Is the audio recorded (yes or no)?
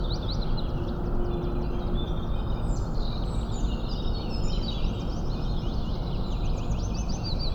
yes